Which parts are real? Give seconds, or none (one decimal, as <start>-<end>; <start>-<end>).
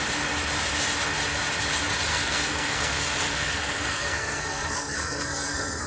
0.0-2.1